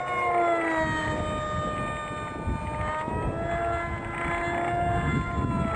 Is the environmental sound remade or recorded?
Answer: recorded